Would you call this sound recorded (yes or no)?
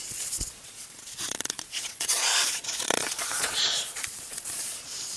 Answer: no